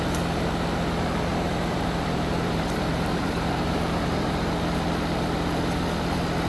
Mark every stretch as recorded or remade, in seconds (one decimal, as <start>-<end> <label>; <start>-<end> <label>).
0.0-1.3 recorded; 1.3-4.5 remade; 4.5-6.5 recorded